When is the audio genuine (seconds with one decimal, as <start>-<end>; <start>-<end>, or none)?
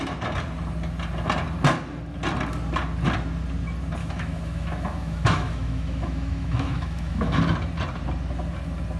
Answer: 0.0-4.0; 7.4-9.0